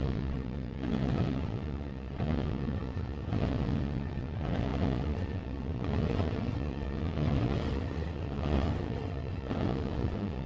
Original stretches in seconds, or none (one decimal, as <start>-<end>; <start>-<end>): none